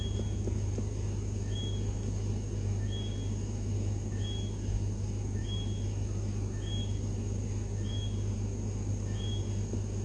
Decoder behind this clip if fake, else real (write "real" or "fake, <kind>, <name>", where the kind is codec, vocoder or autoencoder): real